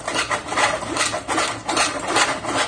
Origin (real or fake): real